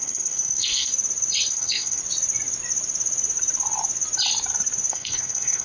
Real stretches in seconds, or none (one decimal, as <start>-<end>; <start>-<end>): 0.9-1.5; 2.0-4.9